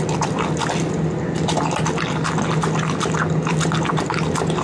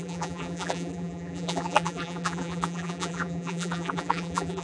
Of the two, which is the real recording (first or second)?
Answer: first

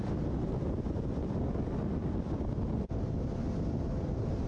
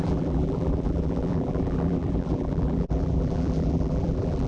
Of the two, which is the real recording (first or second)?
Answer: first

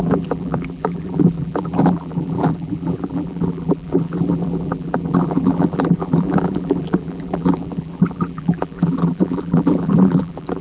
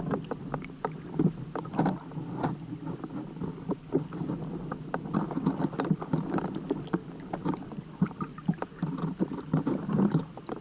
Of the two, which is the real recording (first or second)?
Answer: second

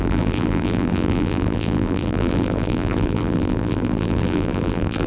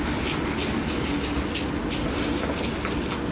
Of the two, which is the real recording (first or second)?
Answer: second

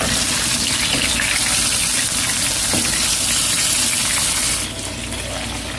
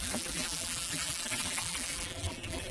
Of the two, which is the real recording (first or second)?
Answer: first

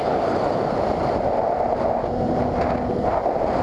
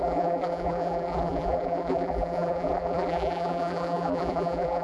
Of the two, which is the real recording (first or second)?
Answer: first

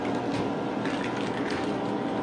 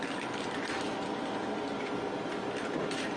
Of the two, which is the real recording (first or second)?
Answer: first